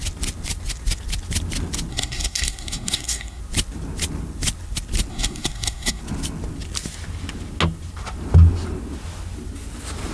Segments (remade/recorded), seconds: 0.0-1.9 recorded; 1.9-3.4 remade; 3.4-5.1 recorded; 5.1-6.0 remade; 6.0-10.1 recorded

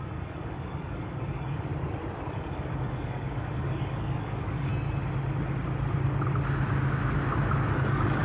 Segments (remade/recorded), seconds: 0.0-1.7 remade; 1.7-2.3 recorded; 2.3-4.7 remade; 4.7-7.7 recorded; 7.7-8.2 remade